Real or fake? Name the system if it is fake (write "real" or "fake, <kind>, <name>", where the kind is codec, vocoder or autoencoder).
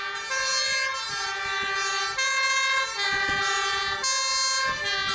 real